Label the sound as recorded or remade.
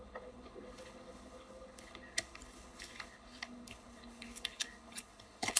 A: remade